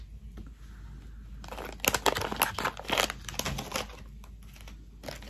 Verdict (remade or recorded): recorded